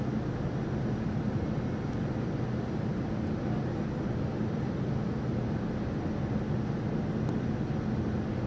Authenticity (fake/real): real